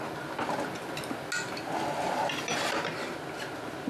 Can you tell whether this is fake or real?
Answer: real